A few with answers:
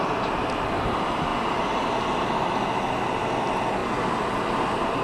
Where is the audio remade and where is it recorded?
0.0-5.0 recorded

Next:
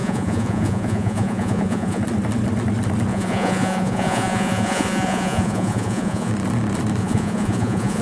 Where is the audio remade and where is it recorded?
0.0-2.0 remade; 2.0-3.1 recorded; 3.1-6.3 remade; 6.3-7.0 recorded; 7.0-8.0 remade

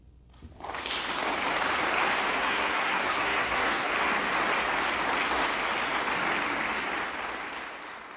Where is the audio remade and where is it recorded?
0.0-2.4 recorded; 2.4-3.9 remade; 3.9-8.2 recorded

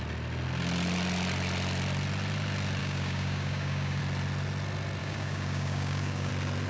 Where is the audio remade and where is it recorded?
0.0-2.8 recorded; 2.8-4.0 remade; 4.0-5.0 recorded; 5.0-6.3 remade; 6.3-6.7 recorded

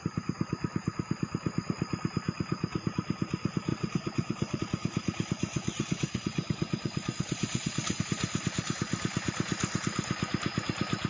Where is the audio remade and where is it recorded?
0.0-3.7 recorded; 3.7-4.6 remade; 4.6-5.5 recorded; 5.5-8.0 remade; 8.0-11.1 recorded

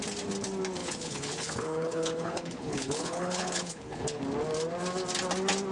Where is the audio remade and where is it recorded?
0.0-0.8 recorded; 0.8-4.2 remade; 4.2-5.7 recorded